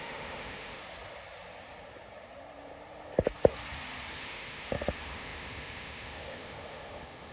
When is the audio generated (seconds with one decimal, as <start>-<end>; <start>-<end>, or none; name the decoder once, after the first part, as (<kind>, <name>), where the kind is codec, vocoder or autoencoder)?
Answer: 0.0-0.8 (autoencoder, DAC-VAE); 4.1-7.3